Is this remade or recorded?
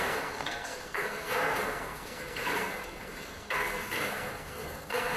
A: remade